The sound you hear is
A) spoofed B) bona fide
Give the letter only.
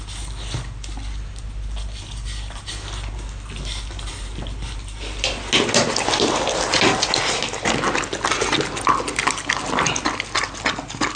B